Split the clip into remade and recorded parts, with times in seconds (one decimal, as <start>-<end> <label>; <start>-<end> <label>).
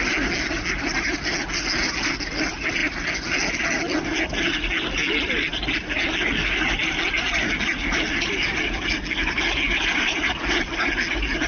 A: 0.0-11.5 recorded